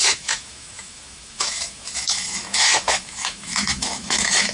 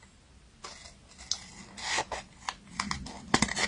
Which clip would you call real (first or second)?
second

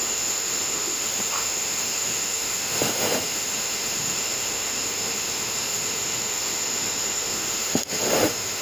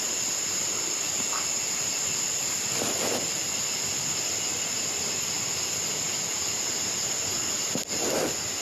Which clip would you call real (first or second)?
second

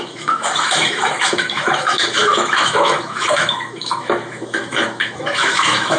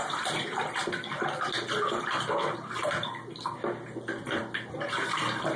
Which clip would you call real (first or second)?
second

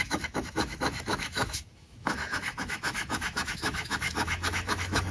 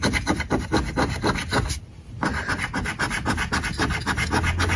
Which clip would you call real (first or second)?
second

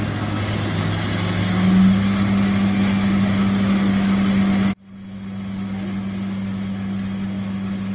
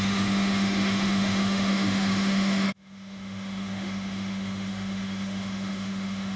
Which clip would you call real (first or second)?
first